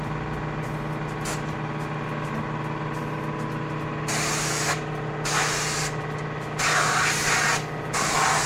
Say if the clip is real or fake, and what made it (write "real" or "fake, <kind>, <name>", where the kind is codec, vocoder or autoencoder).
real